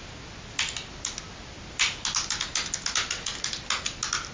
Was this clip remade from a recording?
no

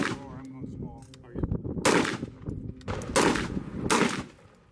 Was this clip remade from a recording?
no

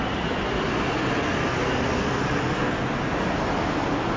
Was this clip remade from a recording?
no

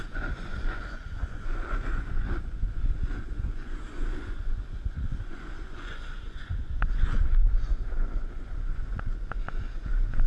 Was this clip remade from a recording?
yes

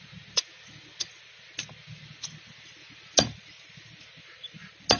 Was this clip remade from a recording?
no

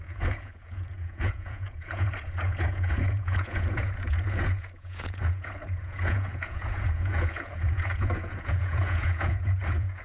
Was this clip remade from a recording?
yes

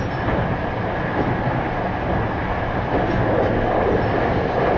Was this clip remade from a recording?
no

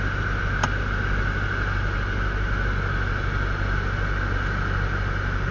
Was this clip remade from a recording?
no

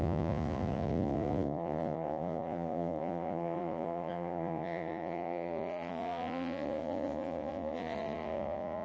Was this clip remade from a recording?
yes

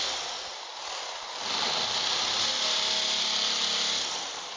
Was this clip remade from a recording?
no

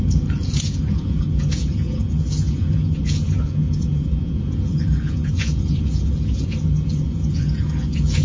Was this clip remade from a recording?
yes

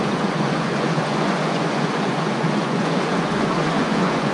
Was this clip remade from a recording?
yes